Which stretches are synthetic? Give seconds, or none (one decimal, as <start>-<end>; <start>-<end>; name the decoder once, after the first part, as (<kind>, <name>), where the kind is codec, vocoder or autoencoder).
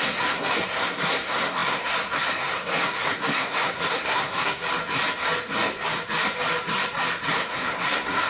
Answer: 0.0-4.6 (codec, SNAC); 7.3-8.3